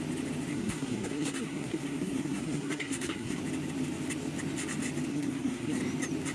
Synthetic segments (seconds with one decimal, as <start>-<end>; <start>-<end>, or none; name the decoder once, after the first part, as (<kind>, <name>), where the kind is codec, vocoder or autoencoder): 0.5-3.4 (codec, SNAC); 5.1-5.8